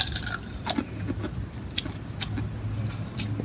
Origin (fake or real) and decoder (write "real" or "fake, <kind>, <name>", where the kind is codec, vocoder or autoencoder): real